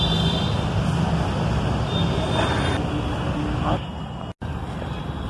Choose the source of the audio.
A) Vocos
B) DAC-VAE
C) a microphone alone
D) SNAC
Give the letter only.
C